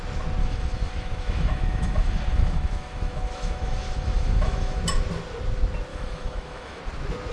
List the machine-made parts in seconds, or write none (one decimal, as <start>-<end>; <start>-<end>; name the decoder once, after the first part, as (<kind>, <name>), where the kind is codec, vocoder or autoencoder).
0.4-4.8 (autoencoder, DAC-VAE); 5.9-6.8